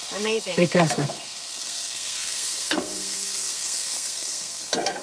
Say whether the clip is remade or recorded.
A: remade